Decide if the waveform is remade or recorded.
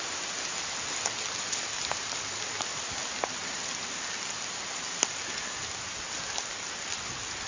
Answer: recorded